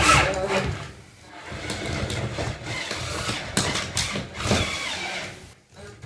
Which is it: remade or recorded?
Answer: recorded